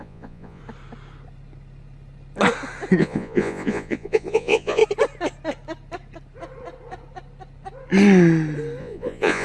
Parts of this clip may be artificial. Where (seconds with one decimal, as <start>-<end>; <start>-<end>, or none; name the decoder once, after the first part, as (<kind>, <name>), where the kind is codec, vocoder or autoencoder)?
0.0-0.6 (vocoder, Vocos); 3.0-4.8; 8.8-9.4